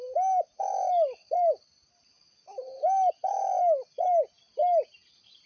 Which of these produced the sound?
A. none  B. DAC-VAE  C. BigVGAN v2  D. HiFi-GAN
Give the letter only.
A